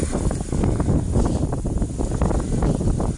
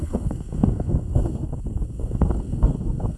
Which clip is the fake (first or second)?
second